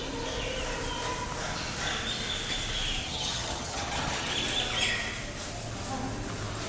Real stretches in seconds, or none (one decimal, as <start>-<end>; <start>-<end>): 0.0-3.0; 4.3-6.7